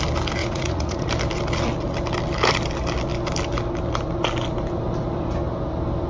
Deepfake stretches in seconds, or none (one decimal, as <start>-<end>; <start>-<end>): 0.4-1.1